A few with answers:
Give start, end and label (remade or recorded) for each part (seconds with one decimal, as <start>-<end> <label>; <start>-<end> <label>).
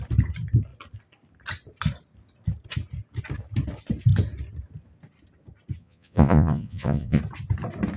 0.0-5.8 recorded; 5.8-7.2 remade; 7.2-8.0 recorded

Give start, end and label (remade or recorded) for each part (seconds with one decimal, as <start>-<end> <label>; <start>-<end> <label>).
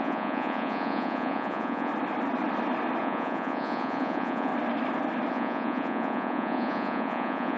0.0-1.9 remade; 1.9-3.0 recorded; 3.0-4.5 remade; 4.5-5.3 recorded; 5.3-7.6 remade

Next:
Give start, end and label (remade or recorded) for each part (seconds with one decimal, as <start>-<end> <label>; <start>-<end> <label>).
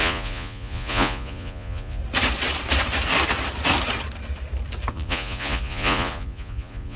0.0-2.0 remade; 2.0-4.9 recorded; 4.9-7.0 remade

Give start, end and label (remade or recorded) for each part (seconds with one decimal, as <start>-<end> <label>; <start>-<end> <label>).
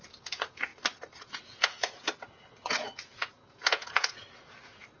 0.0-0.7 remade; 0.7-1.2 recorded; 1.2-5.0 remade